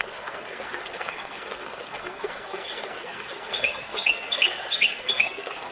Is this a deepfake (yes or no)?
yes